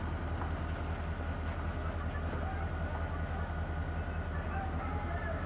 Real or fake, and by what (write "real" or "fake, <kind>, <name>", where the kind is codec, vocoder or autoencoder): real